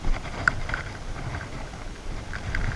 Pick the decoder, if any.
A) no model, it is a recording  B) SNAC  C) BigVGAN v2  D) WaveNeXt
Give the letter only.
C